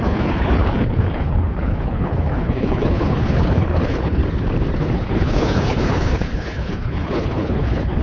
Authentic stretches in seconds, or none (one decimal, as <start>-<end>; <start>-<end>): 4.2-4.8